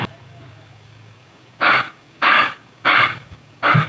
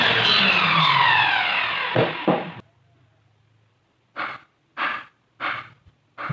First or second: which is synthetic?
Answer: first